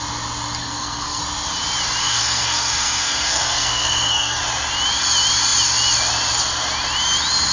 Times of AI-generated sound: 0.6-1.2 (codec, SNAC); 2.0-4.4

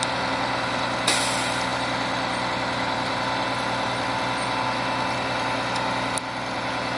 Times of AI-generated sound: none

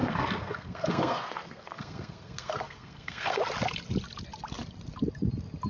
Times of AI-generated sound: 0.0-3.4 (codec, SNAC)

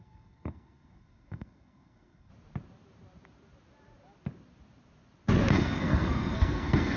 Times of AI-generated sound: 0.0-2.3 (codec, SNAC); 5.5-7.0

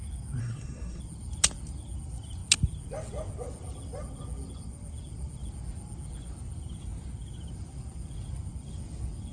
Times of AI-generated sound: 0.4-1.0 (codec, SNAC)

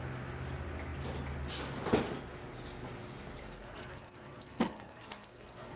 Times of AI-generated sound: 3.4-5.8 (codec, SNAC)

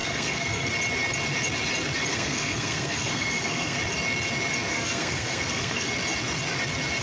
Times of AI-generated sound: 0.0-0.7 (codec, SNAC); 2.1-3.8; 4.7-5.9

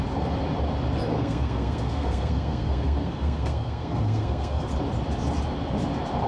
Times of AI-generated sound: 1.1-4.7 (codec, SNAC)